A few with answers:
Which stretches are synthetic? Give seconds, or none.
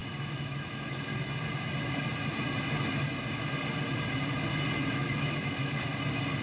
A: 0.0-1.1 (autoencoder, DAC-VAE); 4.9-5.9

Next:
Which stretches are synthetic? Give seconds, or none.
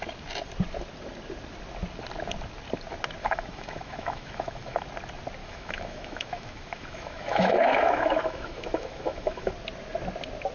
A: 3.2-4.8 (autoencoder, DAC-VAE); 5.4-9.5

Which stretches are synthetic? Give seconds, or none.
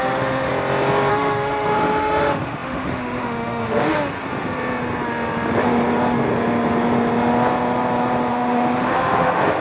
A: 0.0-0.5 (autoencoder, DAC-VAE); 1.1-3.9; 8.3-9.6